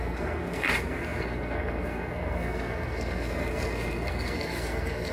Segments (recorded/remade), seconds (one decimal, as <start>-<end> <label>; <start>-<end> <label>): 0.0-5.1 remade